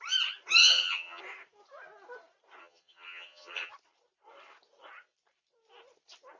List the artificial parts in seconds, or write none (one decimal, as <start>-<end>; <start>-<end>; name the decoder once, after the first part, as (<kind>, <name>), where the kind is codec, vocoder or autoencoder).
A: 0.6-1.2 (vocoder, HiFi-GAN); 2.6-3.7